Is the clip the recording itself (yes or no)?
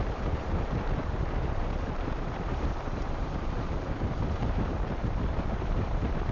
no